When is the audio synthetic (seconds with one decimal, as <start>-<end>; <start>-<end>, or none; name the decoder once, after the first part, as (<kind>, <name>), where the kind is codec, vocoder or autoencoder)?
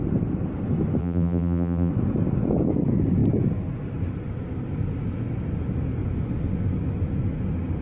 1.0-1.9 (vocoder, BigVGAN v2)